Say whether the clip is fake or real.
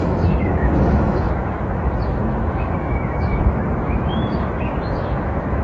fake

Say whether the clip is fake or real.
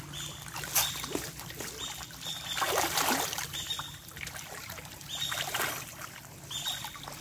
real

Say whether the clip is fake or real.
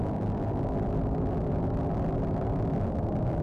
real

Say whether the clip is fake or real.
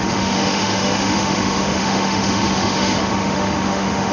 fake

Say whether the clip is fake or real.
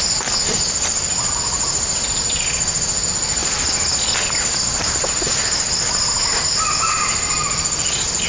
real